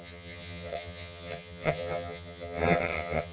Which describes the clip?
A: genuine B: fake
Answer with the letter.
B